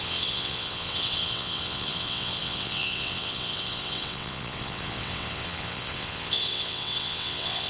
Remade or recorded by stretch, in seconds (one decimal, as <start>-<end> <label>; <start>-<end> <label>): 0.0-7.7 remade